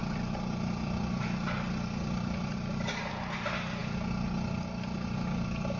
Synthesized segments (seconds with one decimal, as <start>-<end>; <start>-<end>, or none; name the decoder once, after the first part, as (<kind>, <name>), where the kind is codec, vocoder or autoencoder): none